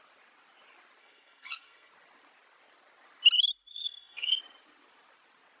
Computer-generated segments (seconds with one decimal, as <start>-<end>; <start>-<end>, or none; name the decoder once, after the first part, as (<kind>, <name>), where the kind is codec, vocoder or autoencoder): 1.0-1.9 (codec, SNAC); 3.7-4.4